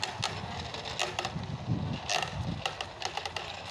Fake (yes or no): no